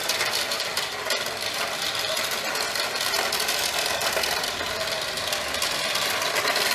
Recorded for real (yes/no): yes